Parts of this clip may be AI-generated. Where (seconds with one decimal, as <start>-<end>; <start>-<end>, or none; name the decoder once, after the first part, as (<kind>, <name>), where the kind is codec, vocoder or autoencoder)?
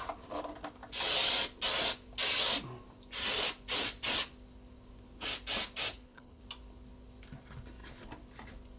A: 5.9-6.4 (codec, HILCodec)